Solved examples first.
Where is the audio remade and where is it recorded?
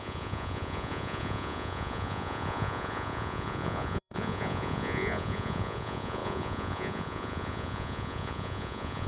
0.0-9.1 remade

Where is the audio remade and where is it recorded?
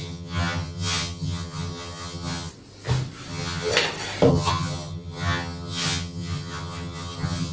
0.0-2.5 remade; 2.5-3.3 recorded; 3.3-3.7 remade; 3.7-4.3 recorded; 4.3-7.5 remade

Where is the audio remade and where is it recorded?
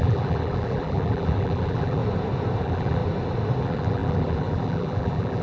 0.0-2.0 remade; 2.0-2.6 recorded; 2.6-3.0 remade; 3.0-3.6 recorded; 3.6-5.4 remade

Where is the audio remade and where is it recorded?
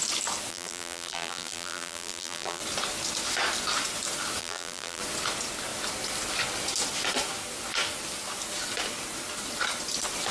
0.0-0.5 recorded; 0.5-2.6 remade; 2.6-4.4 recorded; 4.4-5.0 remade; 5.0-10.3 recorded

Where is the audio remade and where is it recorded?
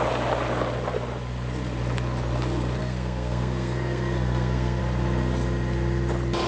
0.0-2.8 recorded; 2.8-4.8 remade; 4.8-6.5 recorded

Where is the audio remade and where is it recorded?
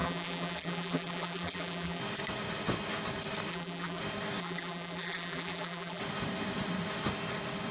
0.0-2.0 remade; 2.0-3.5 recorded; 3.5-4.0 remade; 4.0-4.4 recorded; 4.4-6.0 remade; 6.0-7.7 recorded